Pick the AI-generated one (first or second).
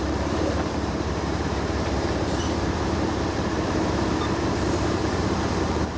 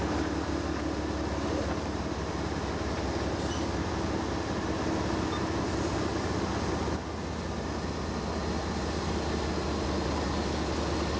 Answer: first